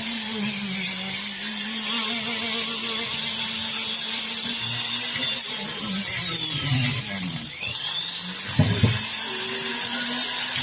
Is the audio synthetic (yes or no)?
no